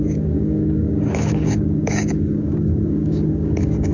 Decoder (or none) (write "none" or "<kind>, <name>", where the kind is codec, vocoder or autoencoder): codec, DAC